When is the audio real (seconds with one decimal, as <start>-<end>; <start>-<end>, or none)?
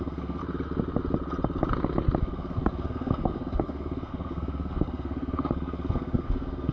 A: 0.4-2.2